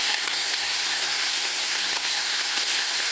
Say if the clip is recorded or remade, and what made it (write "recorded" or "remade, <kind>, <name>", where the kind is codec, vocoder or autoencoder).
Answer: remade, codec, SNAC